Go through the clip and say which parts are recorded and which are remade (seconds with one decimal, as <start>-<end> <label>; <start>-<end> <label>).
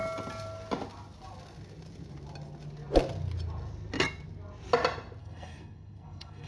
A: 0.0-5.2 recorded; 5.2-6.5 remade